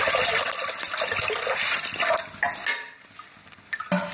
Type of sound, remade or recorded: recorded